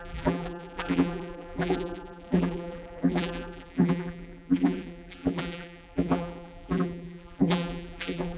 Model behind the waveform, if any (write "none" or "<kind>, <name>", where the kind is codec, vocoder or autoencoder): vocoder, BigVGAN v2